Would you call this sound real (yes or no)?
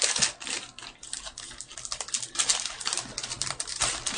yes